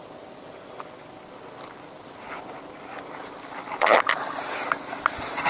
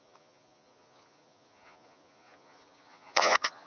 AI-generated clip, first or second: second